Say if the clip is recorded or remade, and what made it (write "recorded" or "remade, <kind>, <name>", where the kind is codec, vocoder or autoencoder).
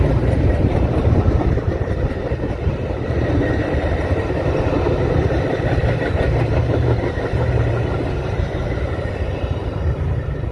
remade, vocoder, BigVGAN v2